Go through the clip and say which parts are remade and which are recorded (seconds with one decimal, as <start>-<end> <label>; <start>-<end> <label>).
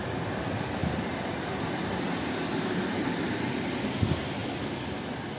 0.0-5.4 recorded